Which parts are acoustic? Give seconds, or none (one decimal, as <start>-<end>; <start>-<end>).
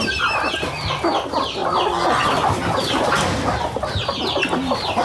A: 0.0-5.0